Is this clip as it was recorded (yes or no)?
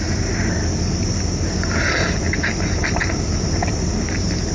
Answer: yes